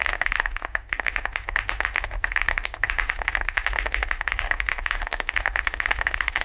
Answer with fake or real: fake